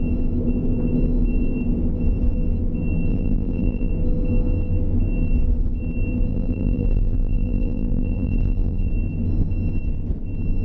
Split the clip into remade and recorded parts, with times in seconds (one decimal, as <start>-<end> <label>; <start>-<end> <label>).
0.0-3.1 recorded; 3.1-3.9 remade; 3.9-6.3 recorded; 6.3-8.9 remade; 8.9-10.6 recorded